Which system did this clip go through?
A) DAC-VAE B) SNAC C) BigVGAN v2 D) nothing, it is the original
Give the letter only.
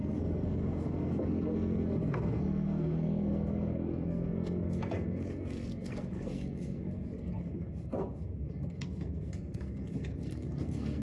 B